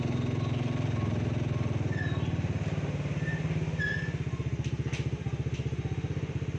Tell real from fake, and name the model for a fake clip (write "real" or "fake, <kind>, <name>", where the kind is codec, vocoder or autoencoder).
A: real